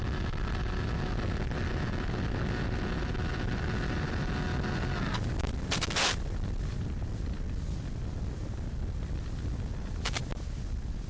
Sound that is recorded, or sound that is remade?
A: recorded